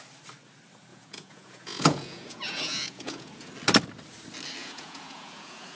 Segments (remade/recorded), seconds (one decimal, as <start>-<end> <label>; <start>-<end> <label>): 0.0-0.9 recorded; 0.9-3.5 remade; 3.5-4.6 recorded; 4.6-5.8 remade